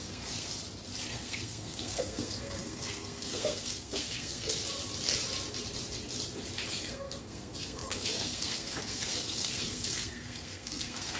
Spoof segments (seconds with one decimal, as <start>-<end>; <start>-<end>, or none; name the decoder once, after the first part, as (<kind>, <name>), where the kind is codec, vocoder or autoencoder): 0.0-0.5 (codec, SNAC); 1.1-4.6; 6.7-11.2